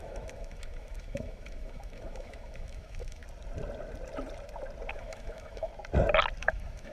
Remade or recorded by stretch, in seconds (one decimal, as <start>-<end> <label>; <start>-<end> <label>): 0.0-3.2 remade; 3.2-4.9 recorded; 4.9-5.7 remade; 5.7-6.4 recorded; 6.4-6.9 remade